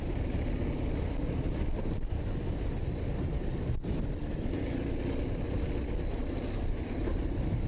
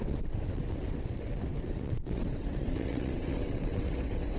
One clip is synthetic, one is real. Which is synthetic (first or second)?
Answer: second